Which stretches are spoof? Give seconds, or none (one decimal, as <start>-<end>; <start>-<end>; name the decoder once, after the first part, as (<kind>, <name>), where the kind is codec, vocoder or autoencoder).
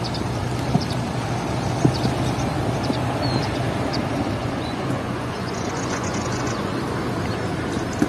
4.4-6.8 (vocoder, Vocos)